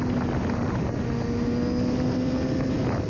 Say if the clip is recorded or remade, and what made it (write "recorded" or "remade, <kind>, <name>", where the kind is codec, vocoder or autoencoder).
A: recorded